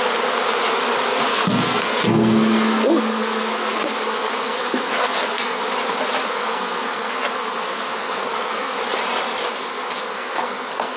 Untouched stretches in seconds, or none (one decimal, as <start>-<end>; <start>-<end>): 0.0-1.3; 5.6-6.2; 8.8-9.5

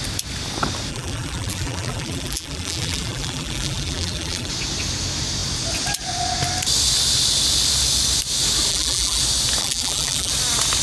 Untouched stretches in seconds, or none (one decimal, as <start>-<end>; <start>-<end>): 0.0-0.9; 4.5-8.7; 9.2-9.6; 10.3-10.8

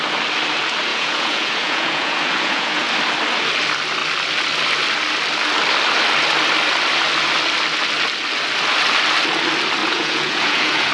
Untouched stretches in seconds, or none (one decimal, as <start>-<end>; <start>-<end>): 0.0-0.9; 2.9-9.8